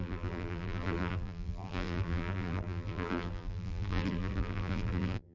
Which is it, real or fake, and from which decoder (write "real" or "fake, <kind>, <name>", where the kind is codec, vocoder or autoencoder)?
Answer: fake, vocoder, BigVGAN v2